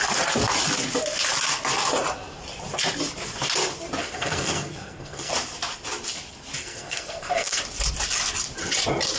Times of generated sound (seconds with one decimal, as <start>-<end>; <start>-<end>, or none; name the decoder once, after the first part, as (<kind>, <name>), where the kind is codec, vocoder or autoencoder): 4.0-5.3 (codec, SNAC); 6.6-7.6